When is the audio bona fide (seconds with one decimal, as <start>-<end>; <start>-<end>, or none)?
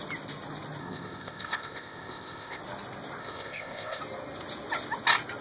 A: 0.0-0.8; 2.6-3.2; 4.0-5.4